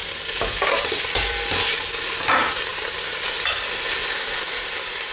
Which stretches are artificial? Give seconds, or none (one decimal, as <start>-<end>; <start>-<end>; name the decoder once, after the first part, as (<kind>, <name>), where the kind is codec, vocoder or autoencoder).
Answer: 0.0-2.7 (vocoder, BigVGAN v2); 3.3-4.0; 4.6-5.1